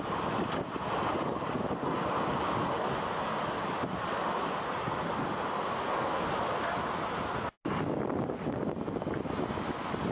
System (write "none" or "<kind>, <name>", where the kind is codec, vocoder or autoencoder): none